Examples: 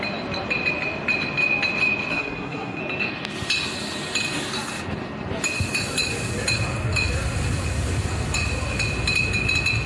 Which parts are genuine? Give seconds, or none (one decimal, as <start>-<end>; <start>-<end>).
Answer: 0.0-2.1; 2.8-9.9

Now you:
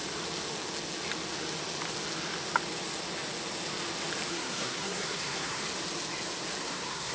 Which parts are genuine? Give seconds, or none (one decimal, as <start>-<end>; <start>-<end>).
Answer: 0.0-4.3; 5.6-6.6

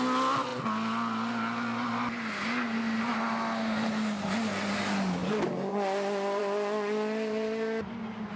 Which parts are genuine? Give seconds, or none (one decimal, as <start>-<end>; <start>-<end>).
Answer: 0.0-8.4

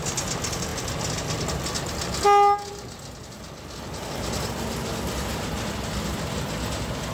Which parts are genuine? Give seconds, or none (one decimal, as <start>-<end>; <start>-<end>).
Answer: 0.0-7.1

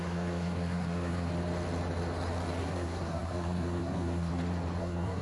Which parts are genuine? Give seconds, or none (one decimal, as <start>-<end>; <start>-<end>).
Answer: 1.3-2.6; 4.3-4.8